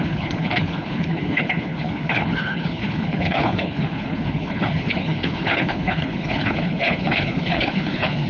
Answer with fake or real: fake